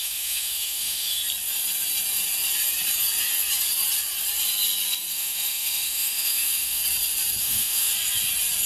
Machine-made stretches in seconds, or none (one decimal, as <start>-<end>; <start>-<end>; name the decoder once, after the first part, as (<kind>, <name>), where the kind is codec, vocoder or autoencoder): 0.0-1.2 (autoencoder, DAC-VAE); 5.1-6.8; 7.4-7.9